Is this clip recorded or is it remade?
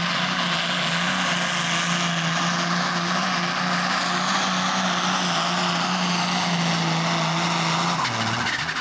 recorded